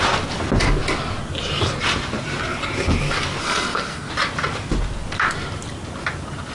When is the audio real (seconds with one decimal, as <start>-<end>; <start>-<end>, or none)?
0.0-3.4; 4.1-6.5